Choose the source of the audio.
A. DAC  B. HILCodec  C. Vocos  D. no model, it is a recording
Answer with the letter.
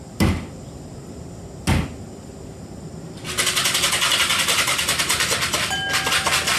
D